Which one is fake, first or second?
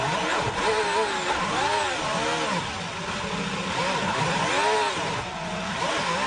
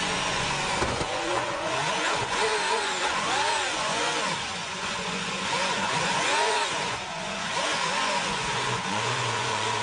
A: second